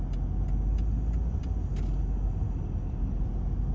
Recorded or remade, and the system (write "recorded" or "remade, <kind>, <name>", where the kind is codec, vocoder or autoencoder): recorded